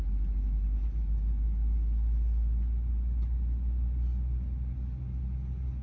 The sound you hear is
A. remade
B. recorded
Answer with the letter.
B